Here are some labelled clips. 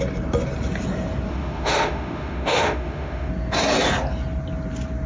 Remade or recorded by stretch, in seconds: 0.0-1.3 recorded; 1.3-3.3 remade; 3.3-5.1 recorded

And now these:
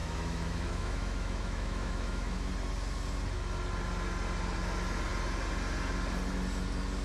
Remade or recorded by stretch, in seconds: 0.0-2.5 remade; 2.5-7.0 recorded